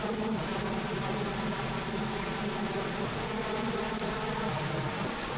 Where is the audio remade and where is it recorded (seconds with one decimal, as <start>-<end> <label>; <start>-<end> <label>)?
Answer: 0.0-5.4 recorded